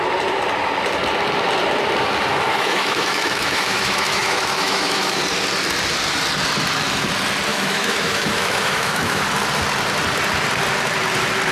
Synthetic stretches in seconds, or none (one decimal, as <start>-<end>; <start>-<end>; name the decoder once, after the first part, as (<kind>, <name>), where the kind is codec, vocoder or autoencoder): 2.5-5.2 (autoencoder, DAC-VAE); 7.5-9.2